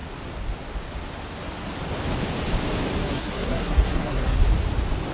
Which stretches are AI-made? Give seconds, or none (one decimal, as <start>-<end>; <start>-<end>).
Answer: 3.0-4.4